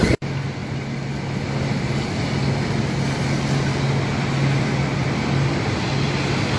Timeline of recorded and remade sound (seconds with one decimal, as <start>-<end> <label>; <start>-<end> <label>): 0.0-6.6 recorded